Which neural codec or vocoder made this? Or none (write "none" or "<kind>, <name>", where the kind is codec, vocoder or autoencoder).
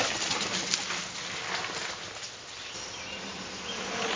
none